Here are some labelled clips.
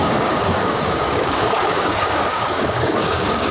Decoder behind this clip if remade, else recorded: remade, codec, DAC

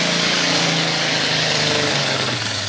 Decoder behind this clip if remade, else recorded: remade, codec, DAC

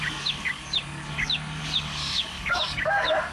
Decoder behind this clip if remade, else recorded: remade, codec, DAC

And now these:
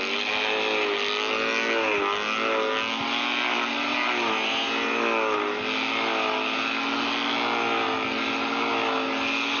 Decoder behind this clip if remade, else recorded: recorded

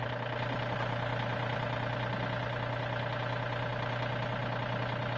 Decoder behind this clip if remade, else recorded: recorded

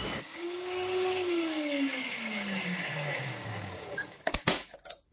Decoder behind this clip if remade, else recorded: remade, codec, DAC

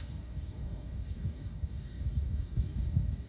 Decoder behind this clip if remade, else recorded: remade, codec, DAC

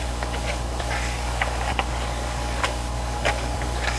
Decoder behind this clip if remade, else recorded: remade, codec, DAC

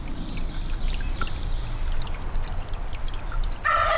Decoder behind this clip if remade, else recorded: recorded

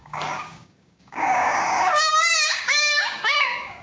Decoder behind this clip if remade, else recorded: remade, codec, DAC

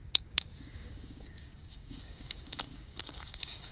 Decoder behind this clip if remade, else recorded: remade, codec, DAC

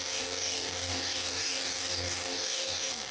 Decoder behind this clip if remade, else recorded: remade, codec, DAC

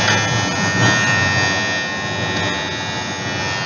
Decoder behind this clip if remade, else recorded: recorded